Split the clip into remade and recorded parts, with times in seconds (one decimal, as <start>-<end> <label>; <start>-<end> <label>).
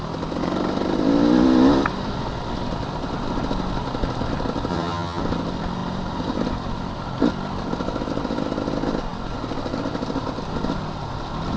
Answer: 0.0-4.7 recorded; 4.7-5.2 remade; 5.2-11.6 recorded